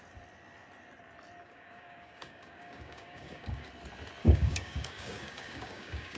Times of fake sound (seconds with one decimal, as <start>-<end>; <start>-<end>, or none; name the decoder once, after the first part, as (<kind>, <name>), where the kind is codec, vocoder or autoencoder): 1.4-3.7 (codec, DAC); 4.2-6.2